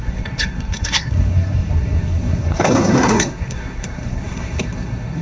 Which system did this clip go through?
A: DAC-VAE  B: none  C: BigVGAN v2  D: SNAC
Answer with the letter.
D